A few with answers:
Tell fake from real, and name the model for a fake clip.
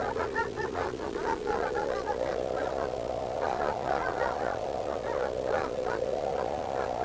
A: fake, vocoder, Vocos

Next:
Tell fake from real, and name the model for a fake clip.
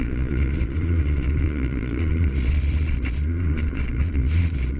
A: fake, vocoder, Vocos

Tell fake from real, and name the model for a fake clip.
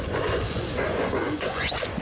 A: fake, vocoder, Vocos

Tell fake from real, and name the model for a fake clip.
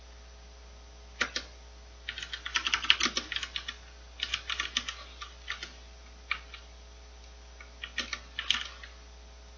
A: real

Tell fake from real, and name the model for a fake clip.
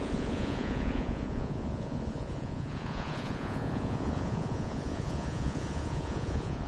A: fake, vocoder, Vocos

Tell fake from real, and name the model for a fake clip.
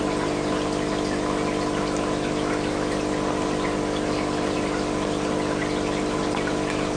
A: real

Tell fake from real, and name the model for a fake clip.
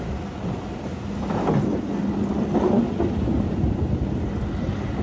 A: real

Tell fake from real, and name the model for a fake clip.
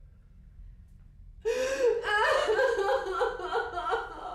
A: real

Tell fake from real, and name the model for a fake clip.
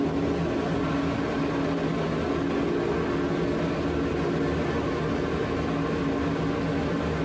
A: real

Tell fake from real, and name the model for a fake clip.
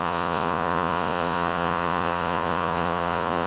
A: fake, vocoder, Vocos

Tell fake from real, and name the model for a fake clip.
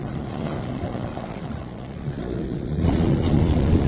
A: fake, vocoder, Vocos